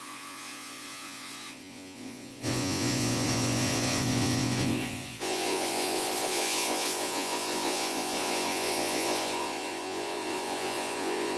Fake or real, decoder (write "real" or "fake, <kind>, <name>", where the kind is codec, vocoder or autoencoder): fake, vocoder, Vocos